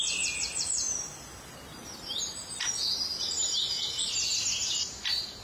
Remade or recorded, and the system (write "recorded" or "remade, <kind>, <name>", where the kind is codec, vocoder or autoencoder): recorded